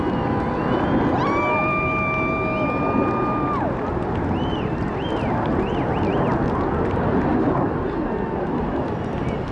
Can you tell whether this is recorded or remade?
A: recorded